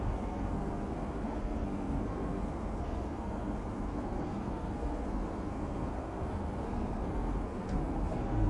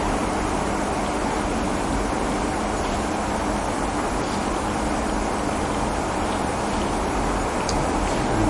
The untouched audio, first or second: second